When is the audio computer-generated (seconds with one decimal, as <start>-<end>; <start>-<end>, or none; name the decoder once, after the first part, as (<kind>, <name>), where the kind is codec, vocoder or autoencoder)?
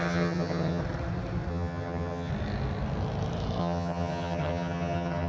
0.0-0.8 (vocoder, HiFi-GAN); 1.5-2.3; 3.6-5.3